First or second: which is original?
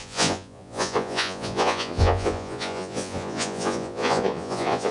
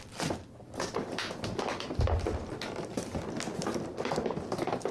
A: second